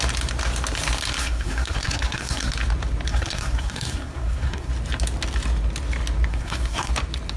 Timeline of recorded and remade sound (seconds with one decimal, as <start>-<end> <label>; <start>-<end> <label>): 0.0-1.2 recorded; 1.2-2.5 remade; 2.5-3.1 recorded; 3.1-4.7 remade; 4.7-6.3 recorded; 6.3-6.9 remade; 6.9-7.4 recorded